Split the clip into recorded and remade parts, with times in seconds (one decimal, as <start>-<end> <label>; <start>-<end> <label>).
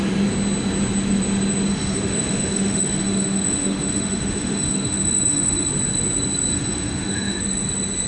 0.0-1.7 recorded; 1.7-5.7 remade; 5.7-6.5 recorded; 6.5-7.4 remade; 7.4-8.1 recorded